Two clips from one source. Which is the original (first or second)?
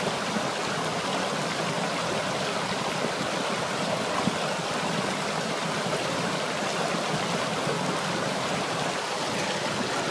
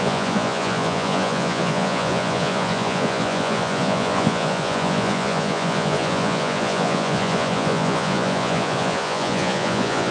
first